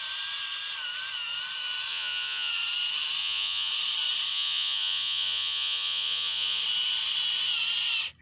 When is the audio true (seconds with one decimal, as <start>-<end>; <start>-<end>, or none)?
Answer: 0.0-1.9; 2.5-3.2; 3.7-4.3; 6.6-8.2